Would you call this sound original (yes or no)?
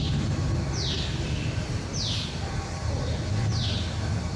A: yes